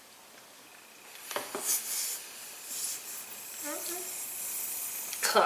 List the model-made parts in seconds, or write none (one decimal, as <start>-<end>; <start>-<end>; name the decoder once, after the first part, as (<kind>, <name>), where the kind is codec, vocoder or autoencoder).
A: none